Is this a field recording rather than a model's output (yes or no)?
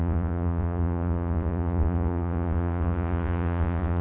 no